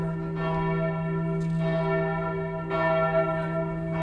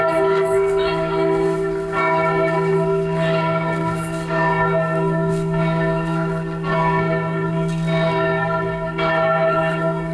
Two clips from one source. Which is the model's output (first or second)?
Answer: second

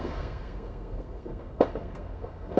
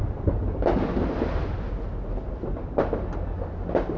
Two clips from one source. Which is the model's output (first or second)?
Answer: first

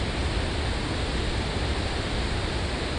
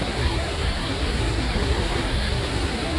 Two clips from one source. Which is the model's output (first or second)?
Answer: second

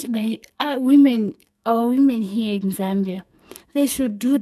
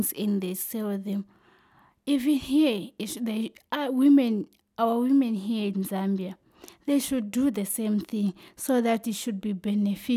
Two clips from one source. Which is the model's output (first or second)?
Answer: first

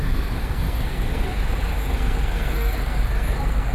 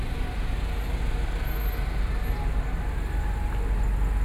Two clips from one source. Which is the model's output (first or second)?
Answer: first